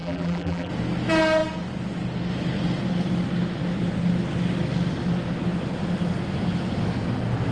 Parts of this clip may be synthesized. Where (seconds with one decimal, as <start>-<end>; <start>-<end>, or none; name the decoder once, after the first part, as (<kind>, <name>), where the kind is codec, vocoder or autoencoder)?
0.0-0.7 (vocoder, BigVGAN v2)